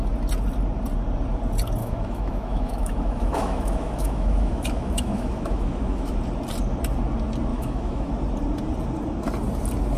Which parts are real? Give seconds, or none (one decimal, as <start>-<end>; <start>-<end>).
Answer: 0.0-1.8; 6.2-7.5; 8.1-10.0